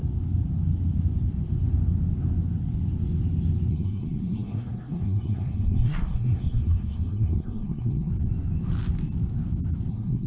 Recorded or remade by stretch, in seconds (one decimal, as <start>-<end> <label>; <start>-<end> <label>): 0.0-3.7 recorded; 3.7-8.1 remade; 8.1-9.9 recorded; 9.9-10.3 remade